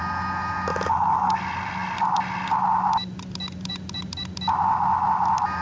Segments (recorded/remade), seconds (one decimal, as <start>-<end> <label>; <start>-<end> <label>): 0.0-0.7 recorded; 0.7-1.4 remade; 1.4-5.6 recorded